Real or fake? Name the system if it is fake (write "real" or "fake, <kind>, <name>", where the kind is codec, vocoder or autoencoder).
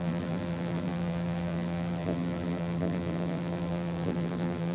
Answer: fake, vocoder, BigVGAN v2